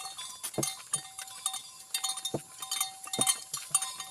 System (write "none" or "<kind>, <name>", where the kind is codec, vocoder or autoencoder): none